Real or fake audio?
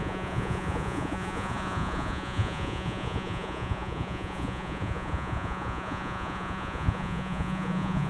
fake